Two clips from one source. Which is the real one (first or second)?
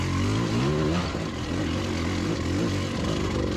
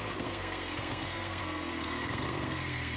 first